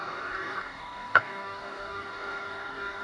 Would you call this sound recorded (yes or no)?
no